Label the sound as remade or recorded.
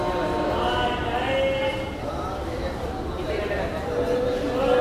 recorded